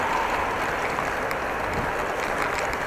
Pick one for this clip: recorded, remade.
recorded